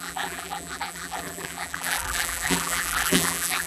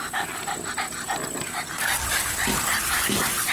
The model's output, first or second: first